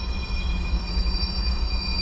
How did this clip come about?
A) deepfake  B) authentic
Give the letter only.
A